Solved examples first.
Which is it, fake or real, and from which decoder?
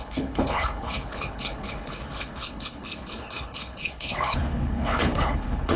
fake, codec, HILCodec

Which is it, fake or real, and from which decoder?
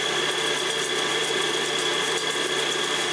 fake, vocoder, BigVGAN v2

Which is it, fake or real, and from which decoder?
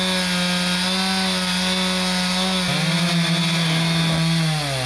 real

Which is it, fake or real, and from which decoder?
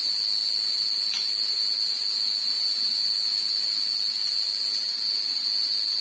real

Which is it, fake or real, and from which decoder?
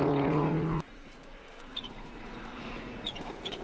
fake, vocoder, Vocos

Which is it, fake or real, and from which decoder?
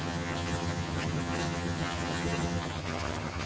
fake, vocoder, HiFi-GAN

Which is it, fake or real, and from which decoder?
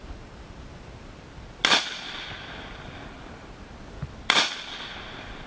real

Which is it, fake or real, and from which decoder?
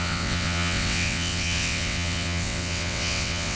fake, vocoder, WaveNeXt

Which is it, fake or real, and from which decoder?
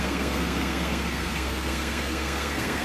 fake, codec, SNAC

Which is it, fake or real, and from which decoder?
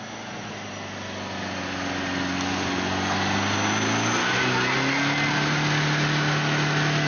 real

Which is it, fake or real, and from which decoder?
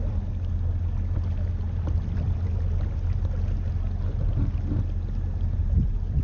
real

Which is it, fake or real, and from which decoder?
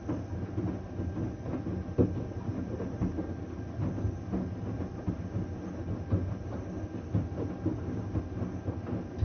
real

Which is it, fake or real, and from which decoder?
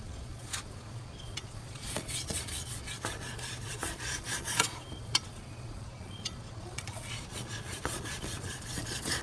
fake, vocoder, Vocos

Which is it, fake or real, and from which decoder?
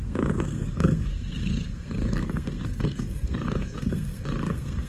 fake, codec, SNAC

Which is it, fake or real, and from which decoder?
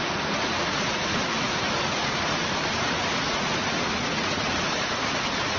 fake, vocoder, Vocos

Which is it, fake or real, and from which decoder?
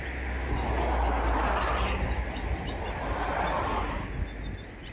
real